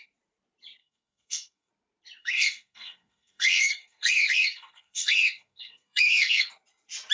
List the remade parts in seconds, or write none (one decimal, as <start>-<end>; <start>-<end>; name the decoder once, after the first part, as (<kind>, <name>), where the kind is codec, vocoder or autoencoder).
0.8-1.7 (codec, SNAC); 2.2-6.5